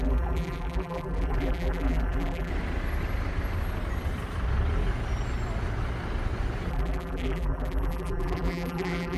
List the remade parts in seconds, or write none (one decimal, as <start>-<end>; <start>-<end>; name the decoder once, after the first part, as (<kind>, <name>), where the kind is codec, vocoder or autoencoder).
0.0-2.5 (vocoder, BigVGAN v2); 6.7-9.2